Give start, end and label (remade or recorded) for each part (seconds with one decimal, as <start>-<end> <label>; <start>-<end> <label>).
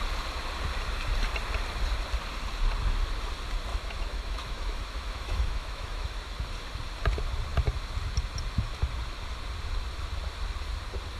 0.0-3.7 recorded; 3.7-6.2 remade; 6.2-11.2 recorded